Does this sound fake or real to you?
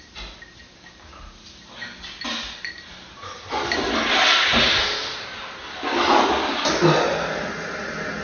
real